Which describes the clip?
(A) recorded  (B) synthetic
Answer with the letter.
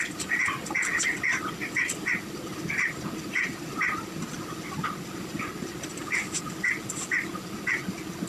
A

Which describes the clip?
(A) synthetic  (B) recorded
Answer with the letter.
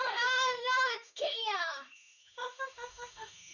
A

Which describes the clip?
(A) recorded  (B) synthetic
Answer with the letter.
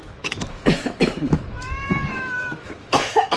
B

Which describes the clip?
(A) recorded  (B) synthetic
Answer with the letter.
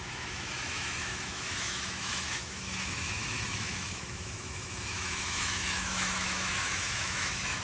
B